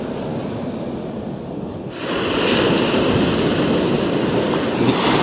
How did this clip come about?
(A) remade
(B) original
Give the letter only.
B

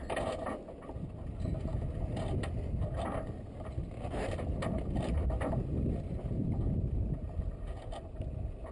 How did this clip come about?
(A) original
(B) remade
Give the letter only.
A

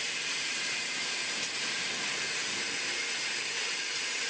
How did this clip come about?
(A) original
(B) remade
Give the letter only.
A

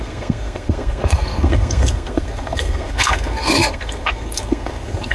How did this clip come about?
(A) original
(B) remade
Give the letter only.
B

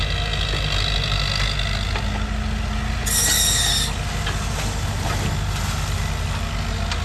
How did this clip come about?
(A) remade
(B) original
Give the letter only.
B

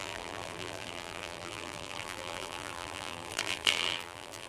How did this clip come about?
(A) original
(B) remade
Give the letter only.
B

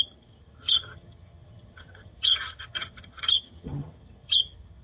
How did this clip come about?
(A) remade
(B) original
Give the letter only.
A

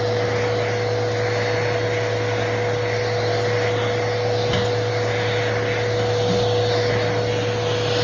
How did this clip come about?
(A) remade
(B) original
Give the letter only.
B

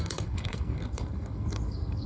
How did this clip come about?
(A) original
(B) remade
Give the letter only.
B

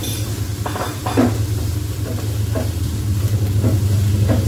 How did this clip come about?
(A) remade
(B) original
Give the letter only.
B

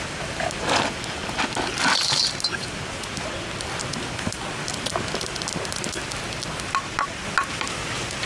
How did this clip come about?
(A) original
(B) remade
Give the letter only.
A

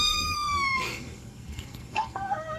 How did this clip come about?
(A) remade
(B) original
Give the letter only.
A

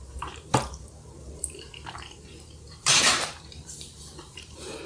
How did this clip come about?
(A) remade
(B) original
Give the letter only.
A